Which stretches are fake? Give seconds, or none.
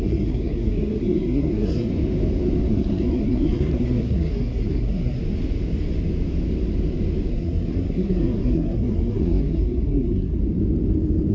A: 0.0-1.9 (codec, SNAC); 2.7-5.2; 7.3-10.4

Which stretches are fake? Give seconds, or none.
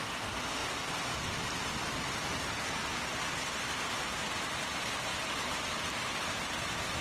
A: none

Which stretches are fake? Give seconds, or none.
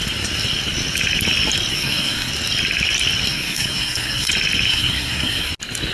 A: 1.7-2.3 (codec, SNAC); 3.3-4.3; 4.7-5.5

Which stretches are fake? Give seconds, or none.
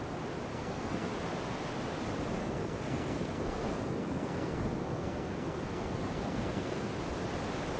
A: 0.5-1.1 (codec, SNAC); 2.4-6.9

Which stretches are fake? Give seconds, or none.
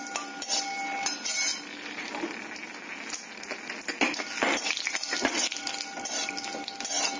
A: none